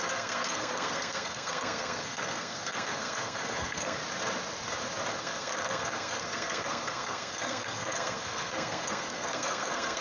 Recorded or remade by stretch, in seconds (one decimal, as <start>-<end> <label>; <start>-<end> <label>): 0.0-4.0 remade; 4.0-5.2 recorded; 5.2-10.0 remade